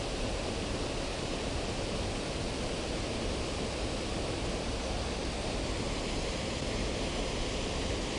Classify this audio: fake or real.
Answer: real